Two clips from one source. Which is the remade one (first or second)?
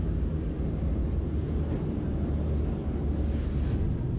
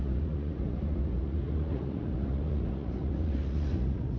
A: second